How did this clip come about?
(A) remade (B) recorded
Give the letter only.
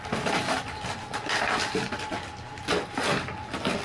B